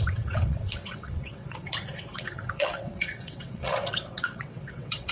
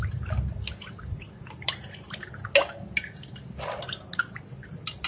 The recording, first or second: second